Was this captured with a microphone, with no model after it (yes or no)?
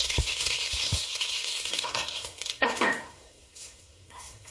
no